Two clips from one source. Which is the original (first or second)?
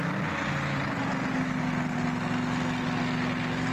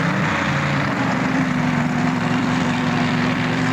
first